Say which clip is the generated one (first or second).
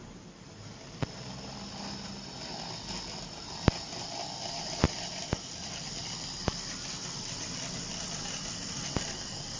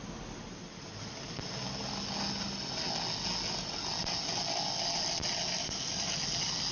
first